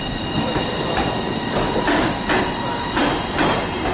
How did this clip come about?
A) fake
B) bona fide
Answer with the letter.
B